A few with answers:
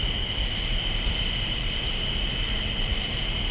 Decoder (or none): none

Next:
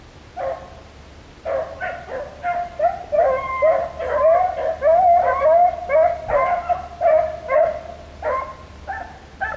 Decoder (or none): none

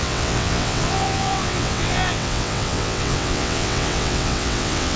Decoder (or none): vocoder, WaveNeXt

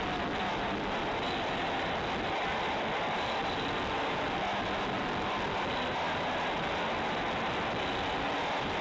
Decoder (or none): none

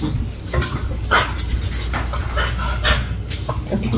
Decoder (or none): none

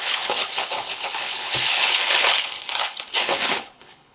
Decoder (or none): codec, HILCodec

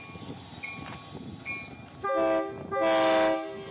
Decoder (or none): none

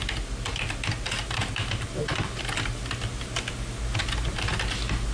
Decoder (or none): none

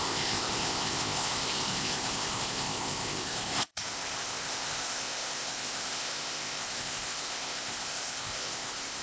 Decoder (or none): codec, ZipCodec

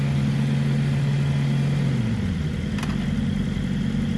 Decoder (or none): none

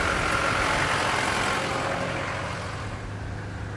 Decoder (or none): none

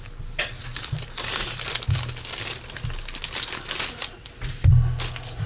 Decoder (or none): none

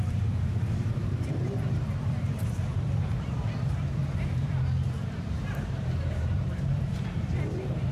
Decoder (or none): vocoder, BigVGAN v2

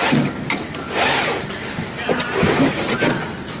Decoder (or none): none